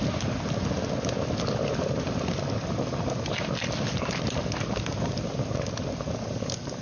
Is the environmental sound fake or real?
real